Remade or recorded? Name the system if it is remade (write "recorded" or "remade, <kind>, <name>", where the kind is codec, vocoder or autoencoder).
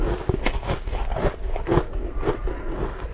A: recorded